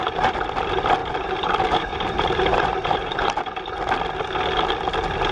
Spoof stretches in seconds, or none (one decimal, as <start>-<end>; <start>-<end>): 1.0-3.3